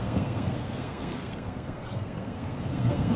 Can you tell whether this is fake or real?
fake